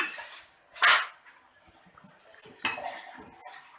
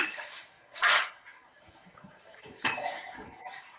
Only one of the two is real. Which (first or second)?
first